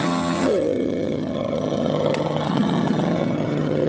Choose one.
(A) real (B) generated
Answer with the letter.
B